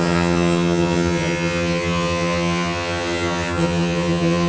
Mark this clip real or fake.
fake